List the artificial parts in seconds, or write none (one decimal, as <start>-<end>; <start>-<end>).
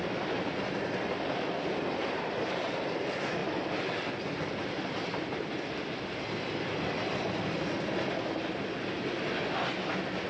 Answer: none